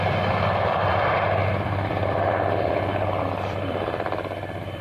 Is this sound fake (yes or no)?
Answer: yes